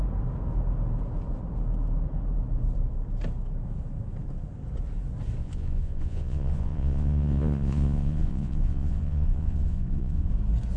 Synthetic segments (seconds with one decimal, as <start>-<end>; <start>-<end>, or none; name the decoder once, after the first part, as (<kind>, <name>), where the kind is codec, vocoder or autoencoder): 5.4-10.3 (vocoder, Vocos)